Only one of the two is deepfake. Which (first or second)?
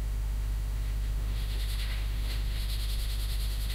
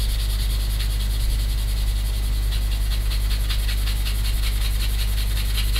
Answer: first